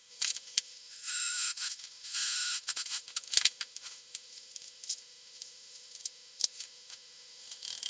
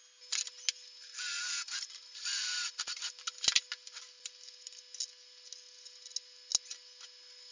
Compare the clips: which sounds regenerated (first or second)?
first